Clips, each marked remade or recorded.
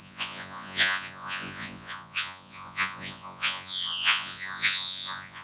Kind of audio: remade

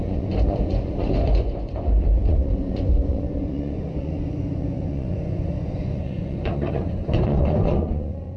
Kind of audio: remade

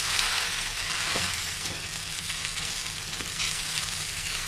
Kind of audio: remade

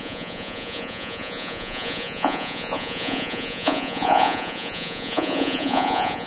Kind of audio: remade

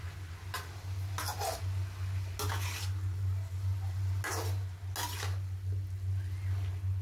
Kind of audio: recorded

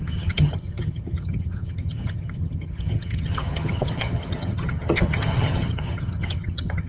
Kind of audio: remade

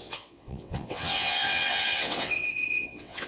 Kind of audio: remade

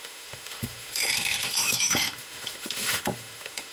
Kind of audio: remade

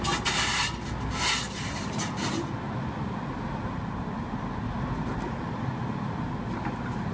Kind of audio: recorded